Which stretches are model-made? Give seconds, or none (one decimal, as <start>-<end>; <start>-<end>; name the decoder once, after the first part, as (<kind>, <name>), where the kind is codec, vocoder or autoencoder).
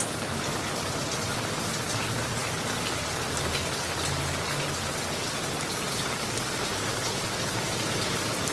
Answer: none